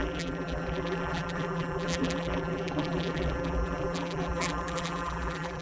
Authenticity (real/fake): fake